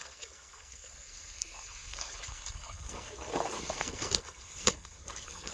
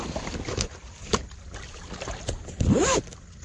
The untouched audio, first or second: second